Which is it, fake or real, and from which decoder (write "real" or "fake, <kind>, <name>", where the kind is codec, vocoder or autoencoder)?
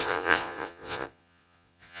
fake, vocoder, Vocos